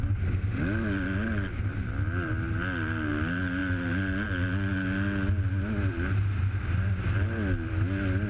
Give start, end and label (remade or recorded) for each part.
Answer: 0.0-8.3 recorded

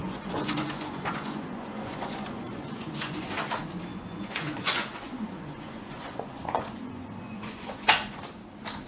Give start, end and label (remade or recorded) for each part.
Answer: 0.0-3.3 remade; 3.3-3.9 recorded; 3.9-8.2 remade; 8.2-8.9 recorded

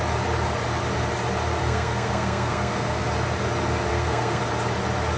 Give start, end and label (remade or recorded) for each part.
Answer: 0.0-1.6 recorded; 1.6-3.0 remade; 3.0-3.9 recorded; 3.9-4.4 remade; 4.4-5.2 recorded

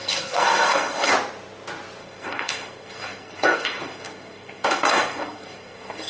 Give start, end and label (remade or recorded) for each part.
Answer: 0.0-1.1 remade; 1.1-2.0 recorded; 2.0-6.1 remade